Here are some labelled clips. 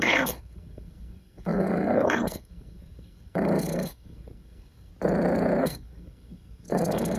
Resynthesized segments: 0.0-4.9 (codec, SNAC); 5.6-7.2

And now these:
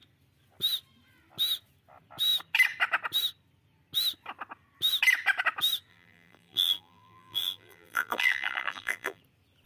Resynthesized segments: 5.9-9.2 (vocoder, BigVGAN v2)

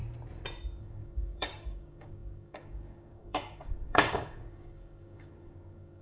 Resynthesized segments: 0.8-6.0 (codec, DAC)

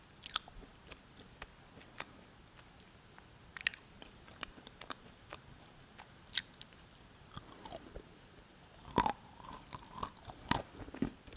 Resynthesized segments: 3.7-6.2 (vocoder, BigVGAN v2); 8.5-9.6

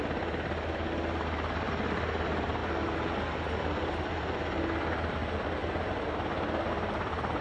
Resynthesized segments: none